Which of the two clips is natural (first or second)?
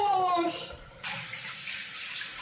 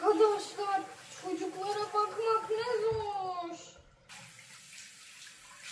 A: second